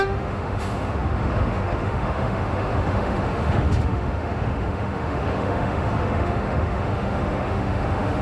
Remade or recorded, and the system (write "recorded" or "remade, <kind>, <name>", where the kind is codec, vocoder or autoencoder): remade, autoencoder, DAC-VAE